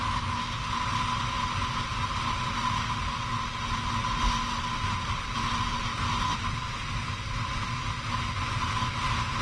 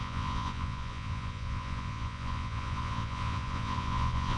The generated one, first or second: second